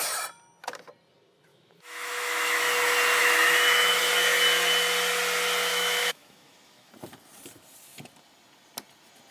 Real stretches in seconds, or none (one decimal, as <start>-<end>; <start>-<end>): 0.0-1.5; 2.6-3.2; 4.0-5.7; 6.9-9.3

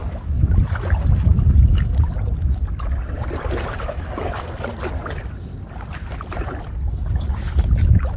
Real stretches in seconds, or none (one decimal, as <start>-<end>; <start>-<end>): 0.0-8.2

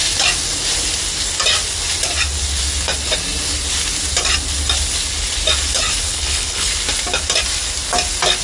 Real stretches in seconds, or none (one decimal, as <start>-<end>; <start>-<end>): 0.0-6.1; 6.7-8.4

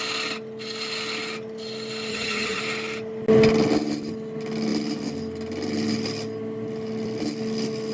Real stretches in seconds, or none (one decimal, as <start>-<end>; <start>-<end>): 0.0-2.1; 2.6-7.9